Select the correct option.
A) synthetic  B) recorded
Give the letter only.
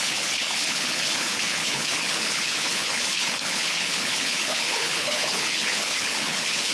A